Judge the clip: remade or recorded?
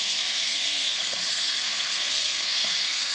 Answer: remade